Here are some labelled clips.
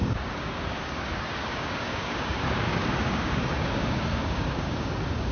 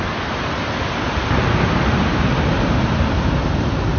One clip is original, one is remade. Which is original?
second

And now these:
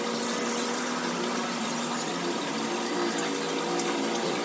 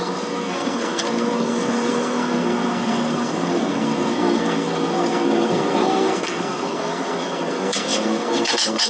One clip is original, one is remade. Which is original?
first